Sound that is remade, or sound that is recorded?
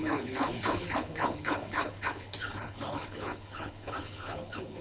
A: remade